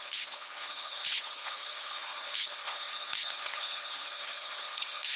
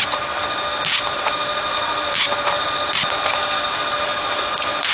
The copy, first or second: first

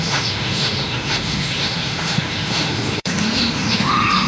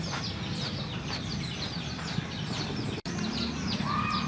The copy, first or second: first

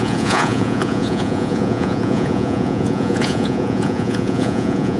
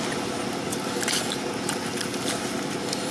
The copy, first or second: first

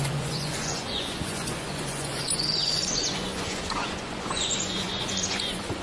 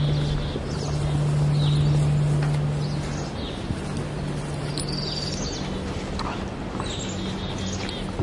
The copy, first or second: first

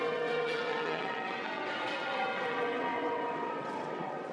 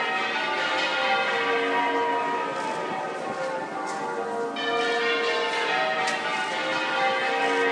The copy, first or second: first